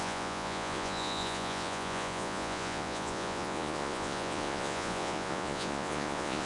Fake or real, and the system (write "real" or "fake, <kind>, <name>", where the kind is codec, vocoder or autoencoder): fake, vocoder, Vocos